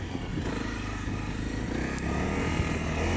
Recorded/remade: recorded